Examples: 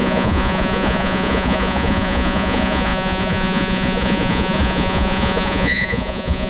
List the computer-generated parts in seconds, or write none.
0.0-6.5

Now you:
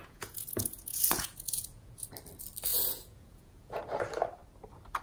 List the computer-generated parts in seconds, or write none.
0.0-2.1; 2.7-3.8